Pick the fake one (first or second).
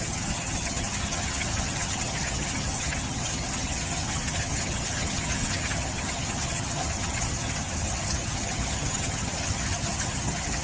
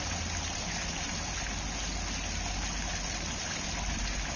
first